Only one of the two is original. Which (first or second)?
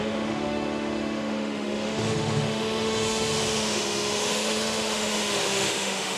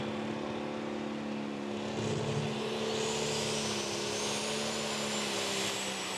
second